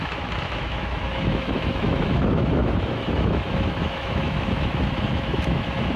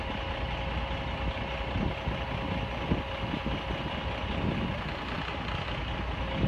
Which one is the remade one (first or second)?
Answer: first